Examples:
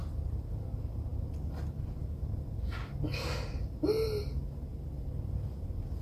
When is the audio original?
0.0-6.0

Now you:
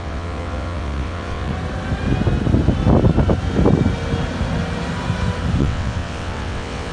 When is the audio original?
1.5-5.6

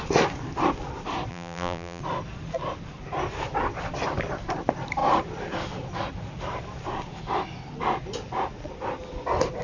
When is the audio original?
0.0-1.3; 2.0-9.6

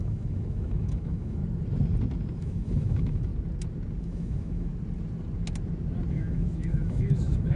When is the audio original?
1.4-2.4; 3.3-4.0; 4.7-6.1

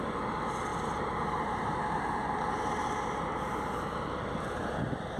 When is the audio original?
0.0-5.2

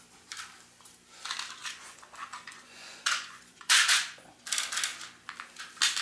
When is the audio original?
0.0-1.6; 4.4-6.0